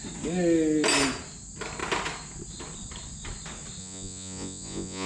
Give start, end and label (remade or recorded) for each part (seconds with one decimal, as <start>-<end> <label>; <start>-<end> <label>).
0.0-3.8 recorded; 3.8-5.1 remade

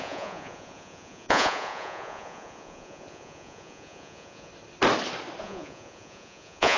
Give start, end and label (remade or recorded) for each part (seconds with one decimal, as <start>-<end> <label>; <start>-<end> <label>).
0.0-4.5 remade; 4.5-5.4 recorded; 5.4-6.8 remade

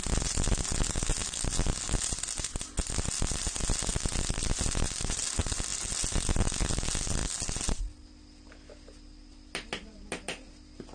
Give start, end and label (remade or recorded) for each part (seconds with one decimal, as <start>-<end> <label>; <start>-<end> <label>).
0.0-10.9 recorded

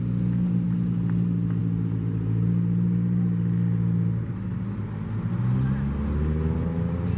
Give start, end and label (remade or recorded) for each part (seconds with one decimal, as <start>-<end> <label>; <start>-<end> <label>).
0.0-7.2 recorded